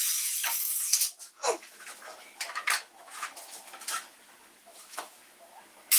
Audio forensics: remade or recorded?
remade